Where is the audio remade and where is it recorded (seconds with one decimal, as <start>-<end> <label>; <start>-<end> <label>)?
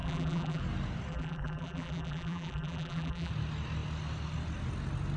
0.0-0.6 remade; 0.6-1.1 recorded; 1.1-3.3 remade; 3.3-5.2 recorded